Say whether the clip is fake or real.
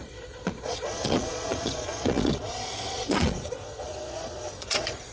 fake